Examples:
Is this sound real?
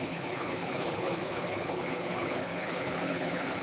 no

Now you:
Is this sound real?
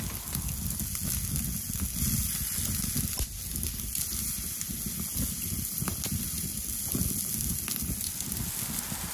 yes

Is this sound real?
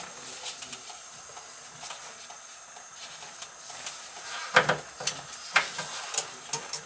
yes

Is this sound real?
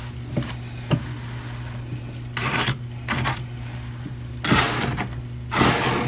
yes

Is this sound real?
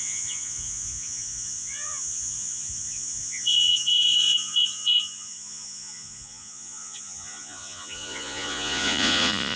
no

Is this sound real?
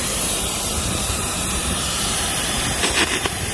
no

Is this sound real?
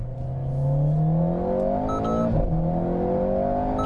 yes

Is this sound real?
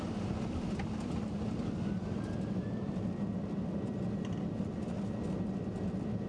yes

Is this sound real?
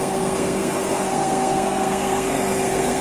no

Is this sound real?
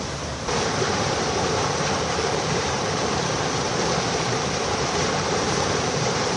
no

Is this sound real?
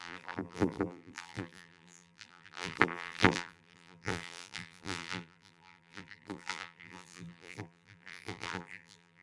no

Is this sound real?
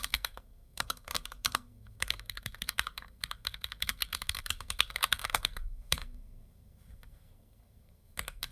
no